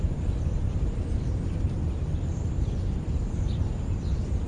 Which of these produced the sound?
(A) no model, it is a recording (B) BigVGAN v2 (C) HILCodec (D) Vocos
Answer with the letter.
B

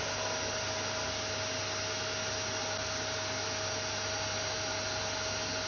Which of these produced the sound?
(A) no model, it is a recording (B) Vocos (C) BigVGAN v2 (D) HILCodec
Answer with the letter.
A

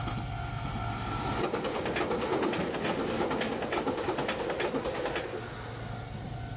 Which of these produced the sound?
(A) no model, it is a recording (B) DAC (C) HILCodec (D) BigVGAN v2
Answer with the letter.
A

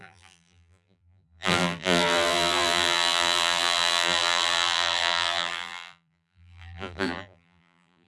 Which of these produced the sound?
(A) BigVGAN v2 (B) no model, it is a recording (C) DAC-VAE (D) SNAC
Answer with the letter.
A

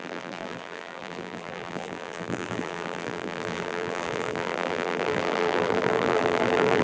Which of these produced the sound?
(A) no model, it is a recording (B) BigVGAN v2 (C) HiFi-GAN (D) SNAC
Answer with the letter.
B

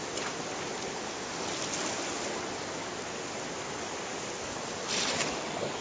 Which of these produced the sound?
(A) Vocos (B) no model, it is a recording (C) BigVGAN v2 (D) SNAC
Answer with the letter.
B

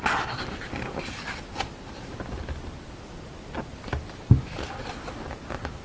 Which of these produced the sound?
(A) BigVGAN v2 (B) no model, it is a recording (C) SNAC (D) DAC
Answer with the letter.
B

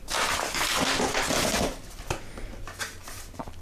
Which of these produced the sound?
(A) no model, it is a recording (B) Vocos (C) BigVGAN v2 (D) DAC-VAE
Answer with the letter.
A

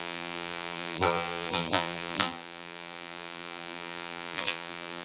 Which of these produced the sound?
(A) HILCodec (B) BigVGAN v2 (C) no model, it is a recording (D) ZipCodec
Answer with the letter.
B